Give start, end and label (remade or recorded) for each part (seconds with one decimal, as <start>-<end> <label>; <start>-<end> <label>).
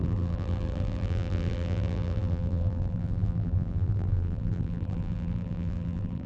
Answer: 0.0-6.3 remade